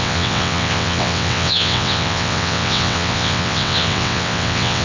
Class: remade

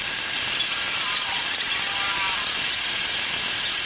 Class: recorded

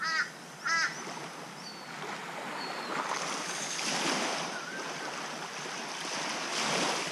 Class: recorded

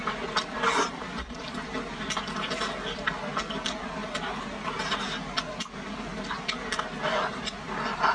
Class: recorded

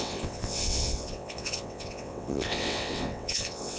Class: remade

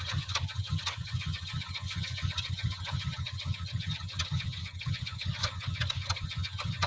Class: remade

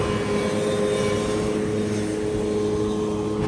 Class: recorded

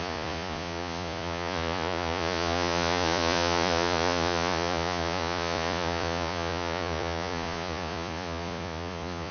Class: remade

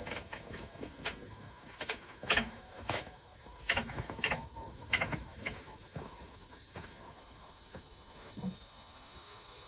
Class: remade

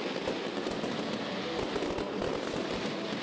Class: recorded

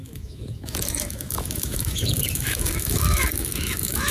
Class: remade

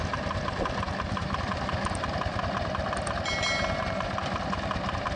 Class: recorded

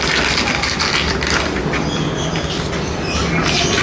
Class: recorded